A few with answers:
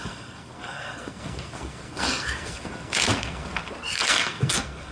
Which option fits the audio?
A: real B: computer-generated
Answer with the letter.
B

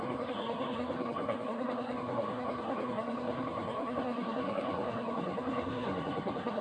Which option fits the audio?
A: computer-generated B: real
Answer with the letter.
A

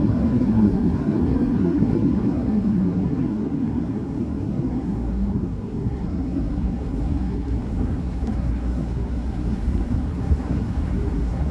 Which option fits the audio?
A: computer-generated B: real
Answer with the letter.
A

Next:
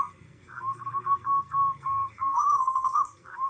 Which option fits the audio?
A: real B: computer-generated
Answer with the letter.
B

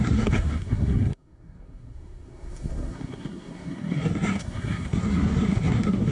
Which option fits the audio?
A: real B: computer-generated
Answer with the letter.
B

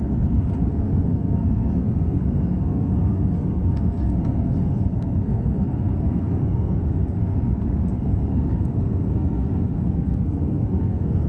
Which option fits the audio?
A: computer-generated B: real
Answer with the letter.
A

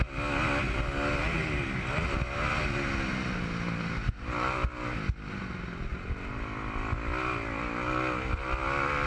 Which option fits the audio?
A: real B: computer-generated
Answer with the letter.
A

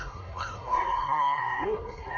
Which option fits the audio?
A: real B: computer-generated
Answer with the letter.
B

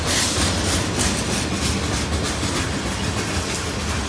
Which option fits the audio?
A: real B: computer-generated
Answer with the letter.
A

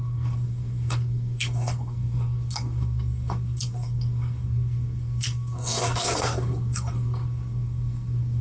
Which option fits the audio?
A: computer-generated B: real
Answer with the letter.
A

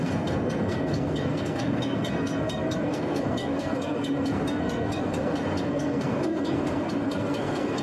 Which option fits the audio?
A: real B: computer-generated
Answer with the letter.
B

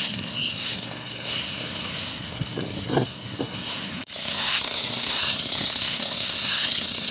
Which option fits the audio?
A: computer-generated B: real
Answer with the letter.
A